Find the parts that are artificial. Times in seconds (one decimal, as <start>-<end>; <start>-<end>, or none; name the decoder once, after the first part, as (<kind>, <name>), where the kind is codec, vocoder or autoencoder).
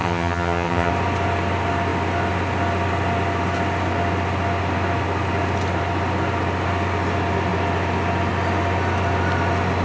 0.0-0.9 (vocoder, HiFi-GAN)